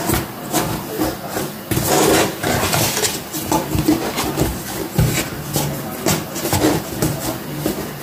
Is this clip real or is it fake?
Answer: real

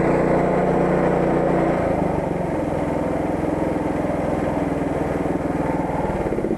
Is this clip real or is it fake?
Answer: real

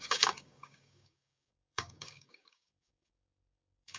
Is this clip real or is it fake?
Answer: fake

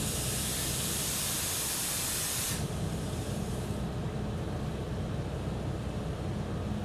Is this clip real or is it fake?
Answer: fake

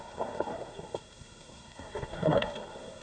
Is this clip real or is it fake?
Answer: fake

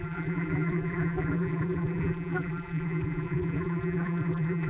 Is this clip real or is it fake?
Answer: fake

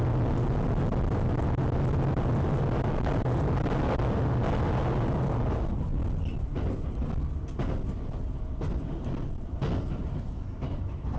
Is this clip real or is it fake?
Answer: real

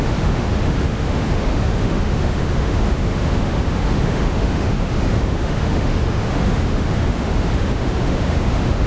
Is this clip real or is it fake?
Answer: fake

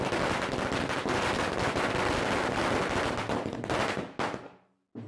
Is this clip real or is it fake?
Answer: real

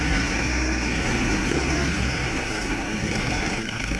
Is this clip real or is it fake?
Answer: fake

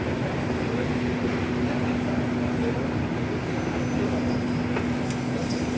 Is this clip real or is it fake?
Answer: real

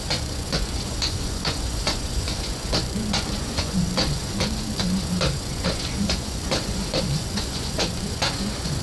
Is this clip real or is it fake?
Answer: fake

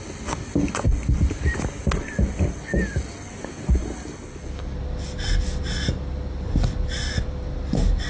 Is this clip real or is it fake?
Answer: real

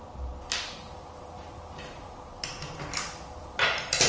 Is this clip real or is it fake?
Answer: real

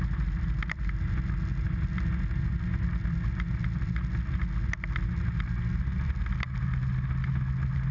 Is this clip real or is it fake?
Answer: real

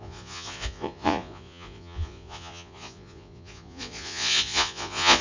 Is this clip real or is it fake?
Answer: fake